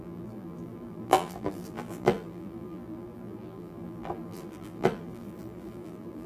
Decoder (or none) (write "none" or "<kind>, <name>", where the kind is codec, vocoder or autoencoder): vocoder, BigVGAN v2